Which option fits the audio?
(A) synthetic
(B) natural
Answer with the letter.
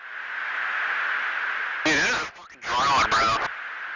B